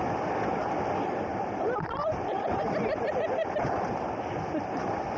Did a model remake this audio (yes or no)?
no